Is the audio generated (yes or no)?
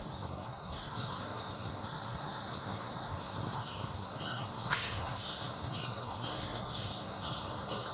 yes